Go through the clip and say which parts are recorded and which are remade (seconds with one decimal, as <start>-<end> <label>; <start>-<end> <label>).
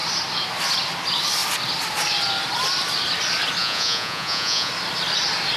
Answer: 0.0-3.6 recorded; 3.6-4.7 remade; 4.7-5.6 recorded